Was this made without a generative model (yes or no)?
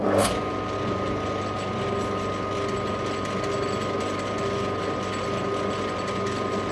yes